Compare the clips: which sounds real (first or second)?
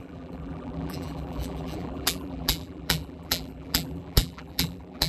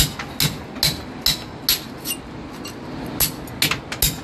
second